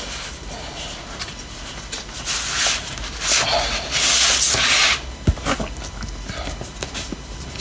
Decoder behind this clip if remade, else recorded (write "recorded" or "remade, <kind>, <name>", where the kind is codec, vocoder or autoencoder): recorded